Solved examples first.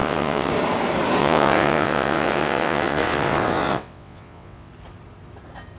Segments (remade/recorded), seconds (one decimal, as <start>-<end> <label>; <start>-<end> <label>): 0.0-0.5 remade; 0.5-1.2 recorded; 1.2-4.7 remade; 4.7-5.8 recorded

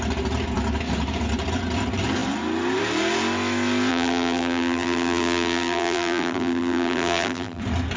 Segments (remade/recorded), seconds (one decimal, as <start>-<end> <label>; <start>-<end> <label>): 0.0-3.9 recorded; 3.9-7.6 remade; 7.6-8.0 recorded

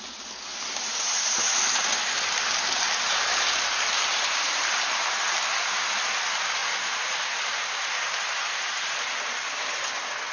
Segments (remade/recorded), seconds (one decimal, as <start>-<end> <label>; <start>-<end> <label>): 0.0-0.5 recorded; 0.5-5.4 remade; 5.4-6.6 recorded; 6.6-8.9 remade; 8.9-10.3 recorded